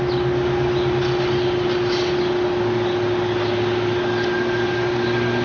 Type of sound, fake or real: real